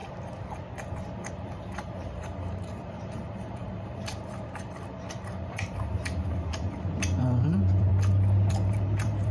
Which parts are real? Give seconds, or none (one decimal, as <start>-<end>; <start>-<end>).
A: 0.0-1.3; 7.9-8.5